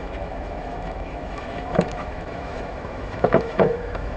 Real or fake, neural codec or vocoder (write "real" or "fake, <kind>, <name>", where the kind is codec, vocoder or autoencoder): fake, autoencoder, DAC-VAE